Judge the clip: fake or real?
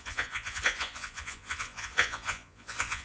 fake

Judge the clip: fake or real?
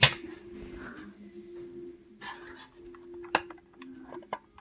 real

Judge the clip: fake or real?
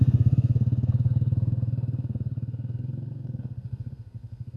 fake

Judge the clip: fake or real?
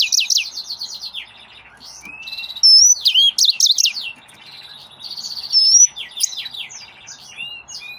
real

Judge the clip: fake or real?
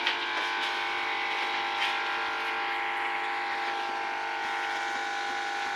real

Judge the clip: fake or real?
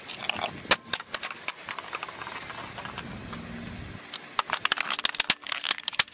real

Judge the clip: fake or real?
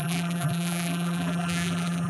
fake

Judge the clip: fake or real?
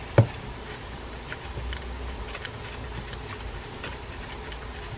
real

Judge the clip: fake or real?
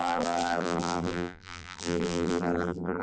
fake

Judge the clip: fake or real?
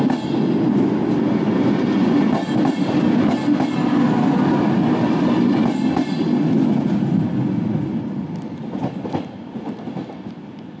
real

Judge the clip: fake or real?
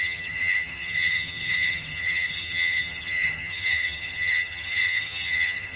fake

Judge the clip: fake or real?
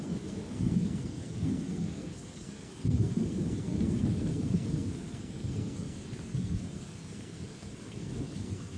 fake